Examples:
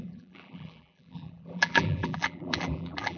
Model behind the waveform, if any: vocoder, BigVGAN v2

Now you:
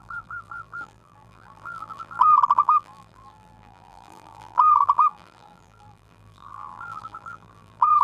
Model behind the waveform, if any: vocoder, BigVGAN v2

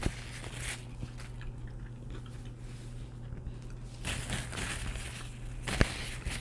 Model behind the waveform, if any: none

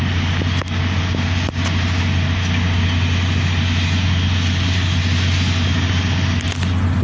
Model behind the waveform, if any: none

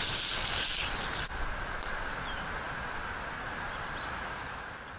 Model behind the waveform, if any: none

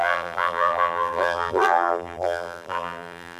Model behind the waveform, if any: vocoder, BigVGAN v2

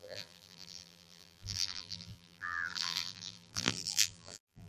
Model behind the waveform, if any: vocoder, BigVGAN v2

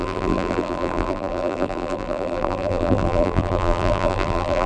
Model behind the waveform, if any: vocoder, BigVGAN v2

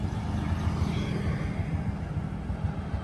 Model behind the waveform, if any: none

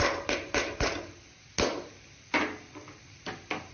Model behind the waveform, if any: none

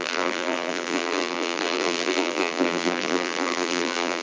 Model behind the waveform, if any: vocoder, BigVGAN v2